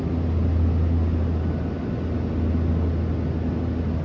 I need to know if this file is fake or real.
real